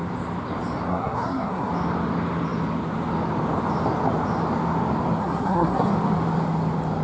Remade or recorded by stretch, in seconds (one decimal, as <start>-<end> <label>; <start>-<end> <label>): 0.0-0.9 recorded; 0.9-1.7 remade; 1.7-5.2 recorded; 5.2-5.9 remade; 5.9-7.0 recorded